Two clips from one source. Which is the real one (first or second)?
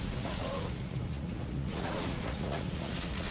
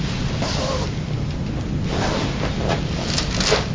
second